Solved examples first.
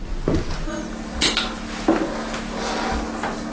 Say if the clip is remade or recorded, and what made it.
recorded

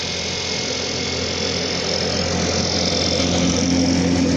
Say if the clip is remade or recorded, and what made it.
recorded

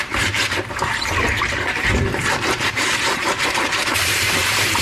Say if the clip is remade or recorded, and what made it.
remade, vocoder, BigVGAN v2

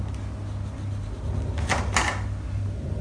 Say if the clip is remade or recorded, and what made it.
recorded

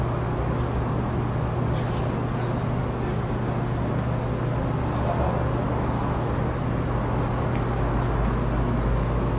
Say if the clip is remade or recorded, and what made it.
recorded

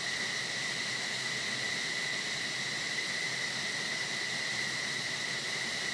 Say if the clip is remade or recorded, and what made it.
recorded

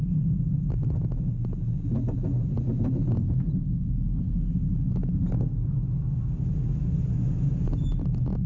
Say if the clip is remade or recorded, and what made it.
recorded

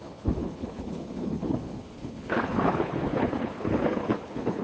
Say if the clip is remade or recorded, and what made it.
remade, codec, HILCodec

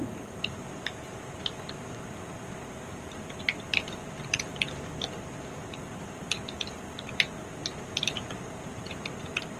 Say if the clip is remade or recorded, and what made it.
remade, vocoder, BigVGAN v2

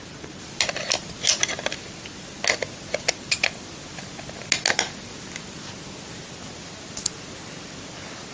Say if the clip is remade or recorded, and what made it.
recorded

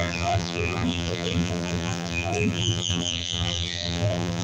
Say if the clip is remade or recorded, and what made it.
remade, vocoder, BigVGAN v2